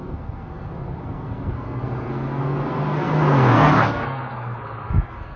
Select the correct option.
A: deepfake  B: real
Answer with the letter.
A